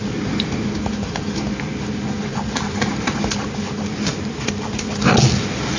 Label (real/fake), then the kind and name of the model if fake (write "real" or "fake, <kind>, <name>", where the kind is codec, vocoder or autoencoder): real